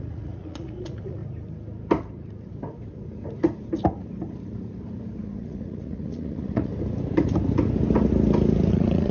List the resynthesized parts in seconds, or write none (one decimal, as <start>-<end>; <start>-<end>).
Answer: 0.0-1.2; 5.2-6.7; 8.7-9.1